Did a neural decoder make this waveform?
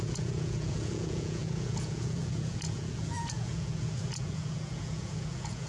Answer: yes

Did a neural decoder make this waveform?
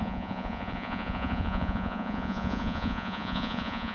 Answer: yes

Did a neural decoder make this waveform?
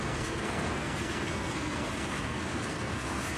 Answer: yes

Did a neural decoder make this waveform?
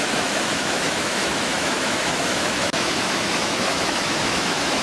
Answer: yes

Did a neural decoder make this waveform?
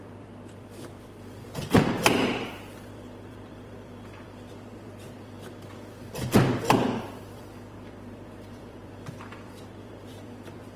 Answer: yes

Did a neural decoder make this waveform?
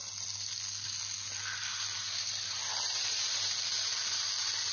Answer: no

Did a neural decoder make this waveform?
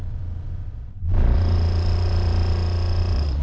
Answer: yes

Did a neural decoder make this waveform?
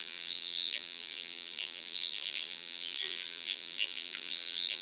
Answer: yes